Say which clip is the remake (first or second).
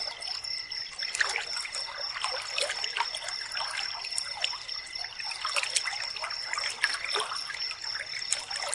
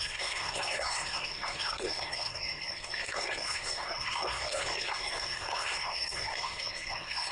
second